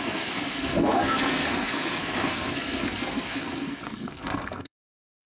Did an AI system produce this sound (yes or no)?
yes